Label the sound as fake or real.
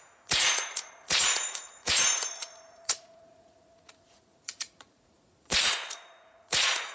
fake